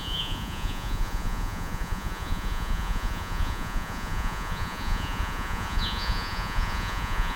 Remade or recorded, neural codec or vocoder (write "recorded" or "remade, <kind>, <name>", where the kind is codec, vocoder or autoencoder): remade, vocoder, Vocos